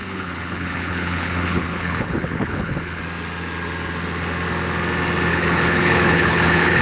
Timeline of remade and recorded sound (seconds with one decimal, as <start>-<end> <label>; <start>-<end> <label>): 0.0-3.0 remade; 3.0-5.3 recorded; 5.3-6.8 remade